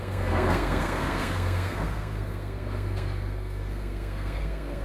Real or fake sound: fake